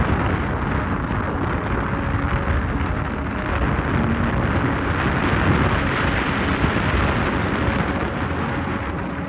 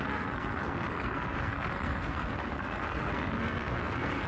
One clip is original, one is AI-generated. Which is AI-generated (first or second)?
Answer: second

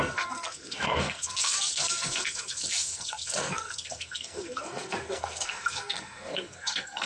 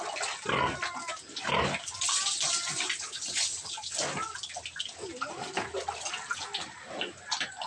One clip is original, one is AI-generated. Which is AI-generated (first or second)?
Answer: first